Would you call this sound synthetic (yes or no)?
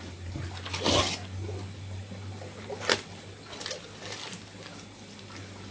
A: no